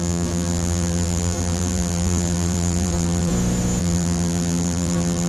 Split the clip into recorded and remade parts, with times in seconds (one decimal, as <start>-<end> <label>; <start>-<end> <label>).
0.0-3.3 remade; 3.3-3.8 recorded; 3.8-5.3 remade